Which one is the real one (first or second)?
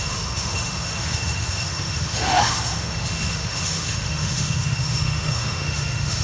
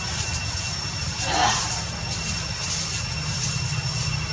second